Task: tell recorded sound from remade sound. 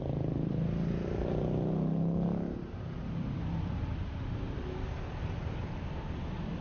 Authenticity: recorded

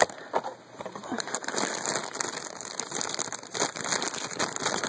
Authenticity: recorded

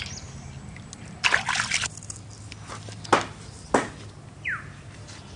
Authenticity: recorded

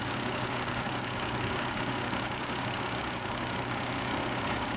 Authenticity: remade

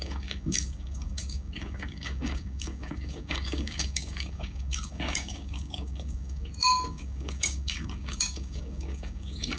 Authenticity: remade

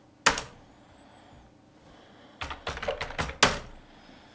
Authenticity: recorded